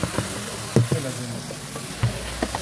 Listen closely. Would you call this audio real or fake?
real